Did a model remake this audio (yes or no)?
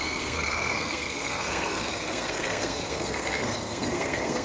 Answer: yes